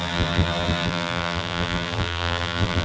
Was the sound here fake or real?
fake